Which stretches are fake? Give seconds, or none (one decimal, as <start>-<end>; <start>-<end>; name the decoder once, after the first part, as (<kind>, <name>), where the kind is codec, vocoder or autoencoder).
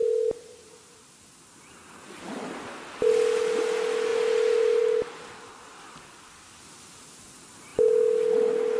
0.0-1.2 (vocoder, BigVGAN v2); 4.1-4.8